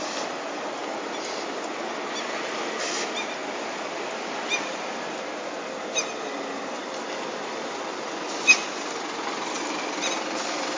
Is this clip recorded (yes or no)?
yes